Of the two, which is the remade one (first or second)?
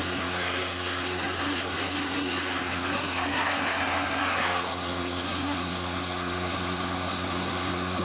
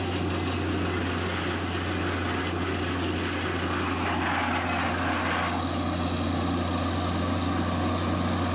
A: first